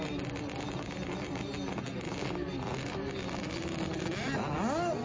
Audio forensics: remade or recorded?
recorded